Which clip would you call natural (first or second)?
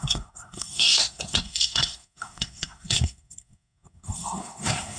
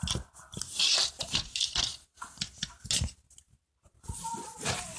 second